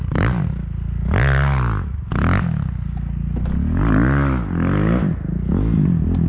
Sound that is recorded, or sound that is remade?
recorded